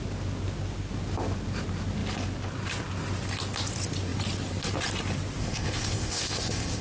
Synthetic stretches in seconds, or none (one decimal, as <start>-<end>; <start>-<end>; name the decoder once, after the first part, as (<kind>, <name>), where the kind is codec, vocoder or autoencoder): 5.4-6.8 (codec, ZipCodec)